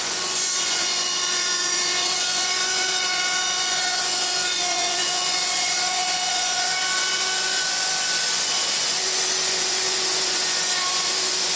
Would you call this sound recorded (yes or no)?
no